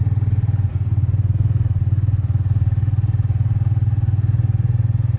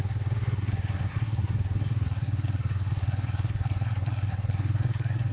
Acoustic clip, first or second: first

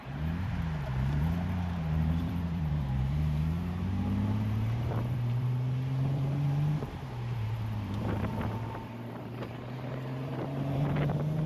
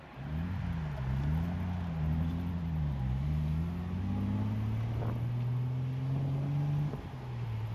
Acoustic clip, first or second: second